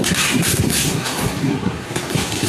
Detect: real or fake fake